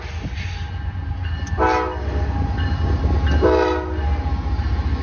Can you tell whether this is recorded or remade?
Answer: recorded